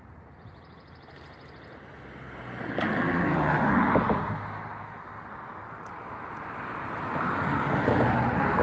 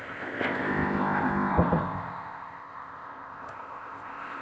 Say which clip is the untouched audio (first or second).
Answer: first